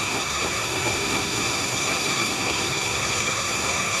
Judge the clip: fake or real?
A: fake